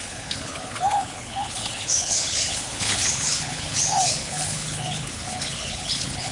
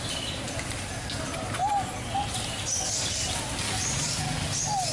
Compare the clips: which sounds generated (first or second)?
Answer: first